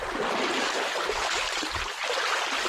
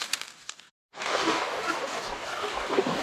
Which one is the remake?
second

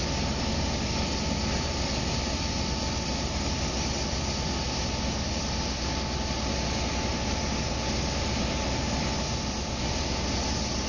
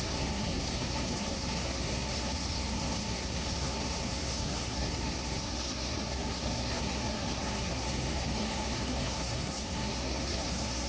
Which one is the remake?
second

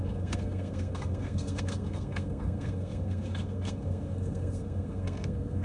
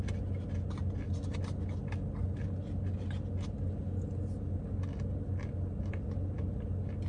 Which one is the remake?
first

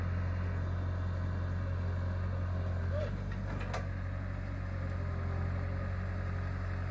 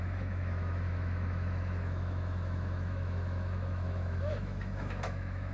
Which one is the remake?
second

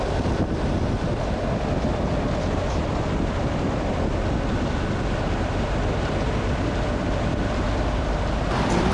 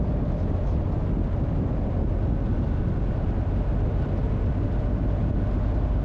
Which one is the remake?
first